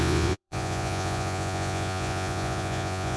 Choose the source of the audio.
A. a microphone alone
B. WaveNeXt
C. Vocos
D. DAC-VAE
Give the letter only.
C